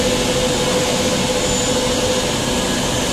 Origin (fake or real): real